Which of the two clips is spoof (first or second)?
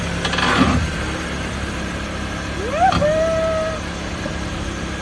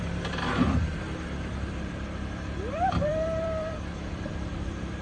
second